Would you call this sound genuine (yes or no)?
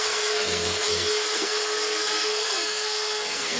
no